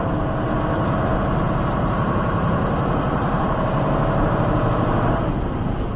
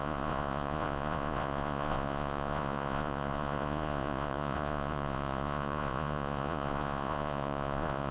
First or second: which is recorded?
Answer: first